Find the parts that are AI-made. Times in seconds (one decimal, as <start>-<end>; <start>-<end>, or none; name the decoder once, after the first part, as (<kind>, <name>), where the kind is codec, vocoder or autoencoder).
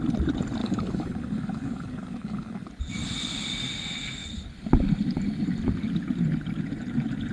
0.6-2.7 (codec, DAC)